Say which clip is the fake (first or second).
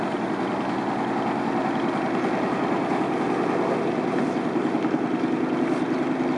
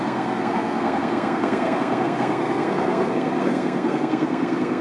second